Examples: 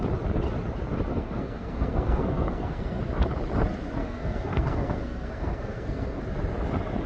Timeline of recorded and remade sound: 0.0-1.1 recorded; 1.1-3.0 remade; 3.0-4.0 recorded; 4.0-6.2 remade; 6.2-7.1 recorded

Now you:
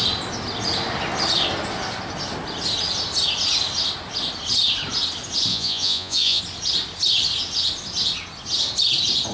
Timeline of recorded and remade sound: 0.0-5.5 recorded; 5.5-6.4 remade; 6.4-9.3 recorded

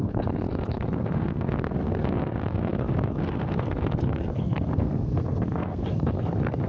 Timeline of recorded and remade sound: 0.0-6.7 remade

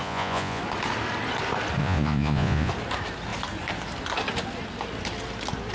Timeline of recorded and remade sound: 0.0-0.6 remade; 0.6-1.8 recorded; 1.8-2.7 remade; 2.7-5.7 recorded

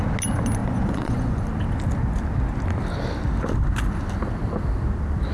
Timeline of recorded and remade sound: 0.0-0.6 recorded; 0.6-1.4 remade; 1.4-5.3 recorded